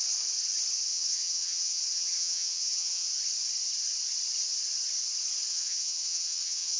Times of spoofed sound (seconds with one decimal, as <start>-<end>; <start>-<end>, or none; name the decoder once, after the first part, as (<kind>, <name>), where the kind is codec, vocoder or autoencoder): 0.9-3.1 (vocoder, HiFi-GAN); 5.5-6.8